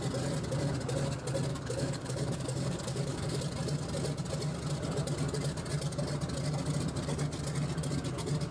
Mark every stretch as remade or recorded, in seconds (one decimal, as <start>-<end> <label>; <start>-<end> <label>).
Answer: 0.0-1.5 recorded; 1.5-3.4 remade; 3.4-8.5 recorded